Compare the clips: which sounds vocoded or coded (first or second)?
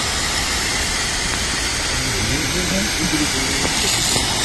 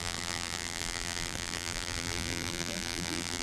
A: second